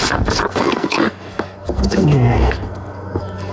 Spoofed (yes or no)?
yes